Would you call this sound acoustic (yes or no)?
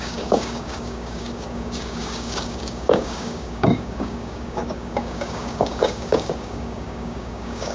no